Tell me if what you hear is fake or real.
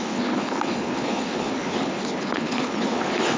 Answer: fake